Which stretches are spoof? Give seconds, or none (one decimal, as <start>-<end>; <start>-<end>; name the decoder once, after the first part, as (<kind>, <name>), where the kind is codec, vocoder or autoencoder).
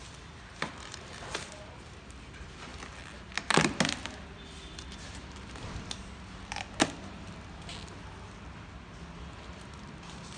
none